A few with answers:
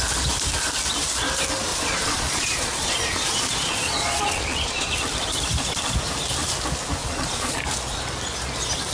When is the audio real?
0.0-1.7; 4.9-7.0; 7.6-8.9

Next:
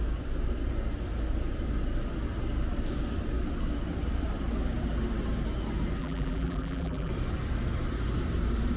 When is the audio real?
0.0-6.0; 7.1-8.8

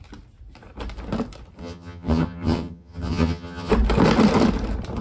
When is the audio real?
0.0-1.6; 3.7-5.0

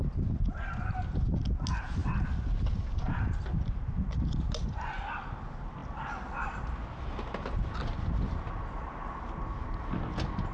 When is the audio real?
0.0-10.5